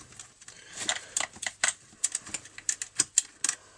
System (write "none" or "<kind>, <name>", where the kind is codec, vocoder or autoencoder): none